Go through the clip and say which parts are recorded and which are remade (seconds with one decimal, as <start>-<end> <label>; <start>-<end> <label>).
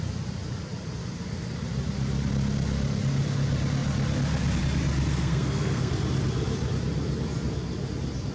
0.0-5.1 recorded; 5.1-5.9 remade; 5.9-8.3 recorded